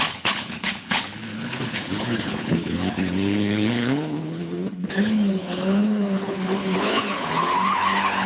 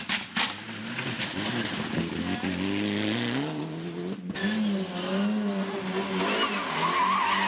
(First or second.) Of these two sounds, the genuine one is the second